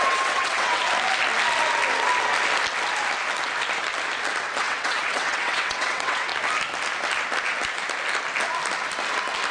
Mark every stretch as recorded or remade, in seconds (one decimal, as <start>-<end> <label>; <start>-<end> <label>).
0.0-0.8 remade; 0.8-4.6 recorded; 4.6-6.3 remade; 6.3-9.5 recorded